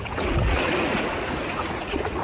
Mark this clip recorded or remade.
remade